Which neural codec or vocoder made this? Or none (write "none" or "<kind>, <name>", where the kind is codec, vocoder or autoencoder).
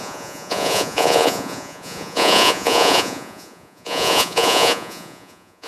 vocoder, Vocos